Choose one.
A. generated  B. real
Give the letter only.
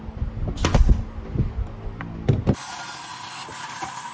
B